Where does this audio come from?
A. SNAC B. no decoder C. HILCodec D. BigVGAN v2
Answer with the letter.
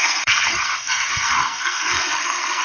A